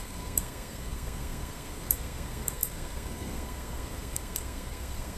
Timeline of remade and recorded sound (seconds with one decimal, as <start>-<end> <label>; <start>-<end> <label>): 0.0-5.2 remade